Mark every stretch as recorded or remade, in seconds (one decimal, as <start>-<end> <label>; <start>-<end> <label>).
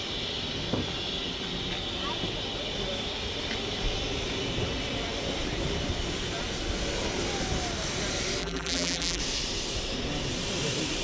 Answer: 0.0-8.4 recorded; 8.4-9.2 remade; 9.2-11.0 recorded